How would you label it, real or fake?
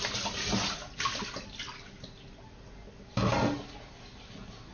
real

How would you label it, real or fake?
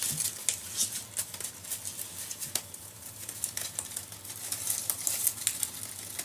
real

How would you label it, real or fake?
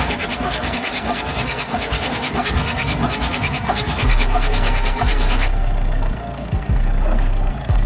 fake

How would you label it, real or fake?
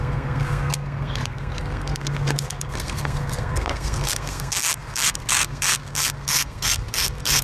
fake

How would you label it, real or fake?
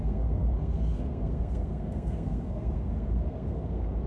fake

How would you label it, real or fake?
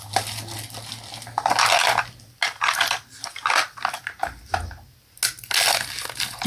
real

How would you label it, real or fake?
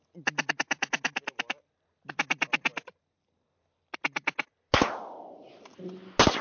real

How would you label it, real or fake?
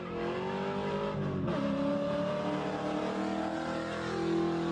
real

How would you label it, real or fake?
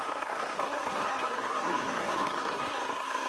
fake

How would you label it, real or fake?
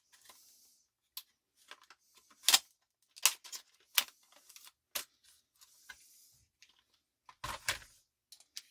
real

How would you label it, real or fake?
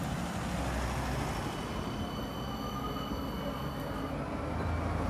real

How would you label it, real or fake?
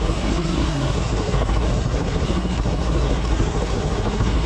fake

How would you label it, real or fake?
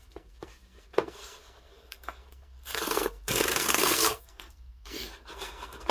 fake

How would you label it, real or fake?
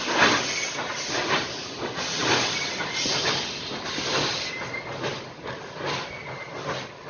real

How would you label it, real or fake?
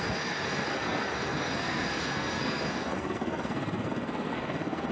fake